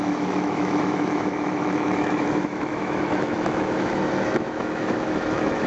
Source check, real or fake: fake